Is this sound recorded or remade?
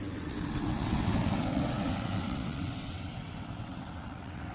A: remade